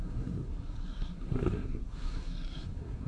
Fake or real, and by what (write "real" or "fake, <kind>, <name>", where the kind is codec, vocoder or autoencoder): fake, codec, SNAC